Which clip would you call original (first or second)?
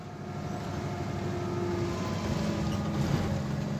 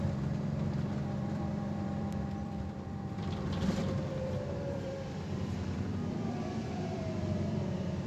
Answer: first